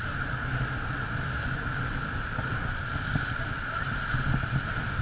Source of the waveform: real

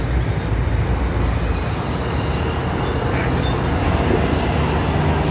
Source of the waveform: real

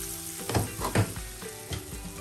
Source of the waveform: real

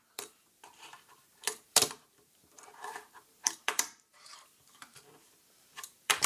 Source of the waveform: fake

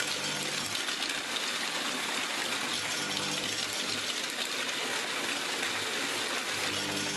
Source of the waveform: real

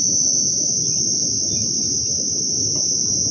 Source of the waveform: real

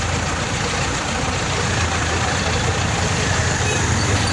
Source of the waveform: fake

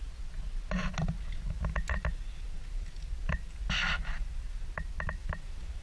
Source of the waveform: real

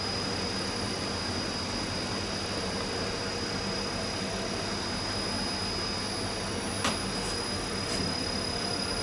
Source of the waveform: real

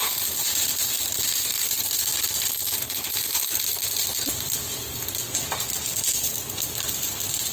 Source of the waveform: real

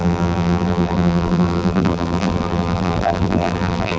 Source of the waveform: fake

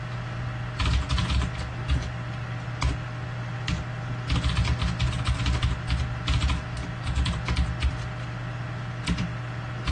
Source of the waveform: real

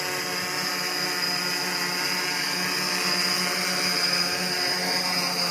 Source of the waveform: real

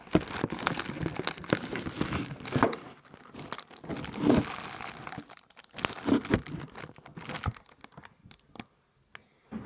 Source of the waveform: real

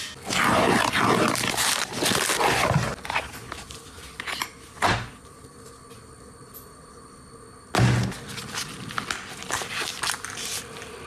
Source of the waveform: real